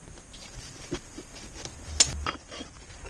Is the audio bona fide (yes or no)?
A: yes